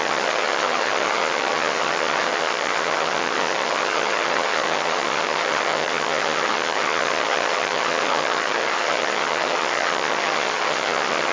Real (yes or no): no